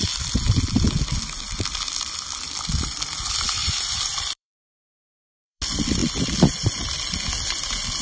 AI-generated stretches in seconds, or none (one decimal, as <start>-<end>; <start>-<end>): 3.6-5.6